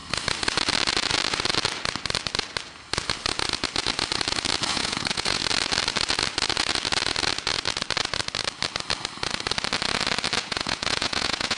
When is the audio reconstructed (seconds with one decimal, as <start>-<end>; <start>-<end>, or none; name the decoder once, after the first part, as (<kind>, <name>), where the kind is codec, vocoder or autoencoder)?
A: 4.7-5.4 (vocoder, Vocos); 10.4-11.6